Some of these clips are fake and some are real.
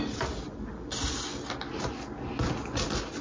real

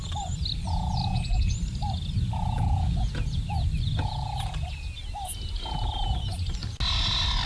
real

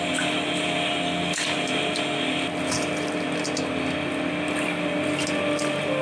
real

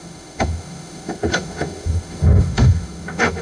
fake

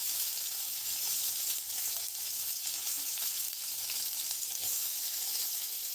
fake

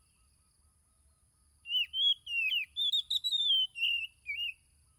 real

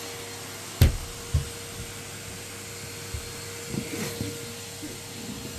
real